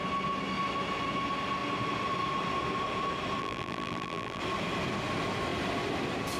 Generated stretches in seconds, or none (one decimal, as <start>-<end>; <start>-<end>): 3.4-4.4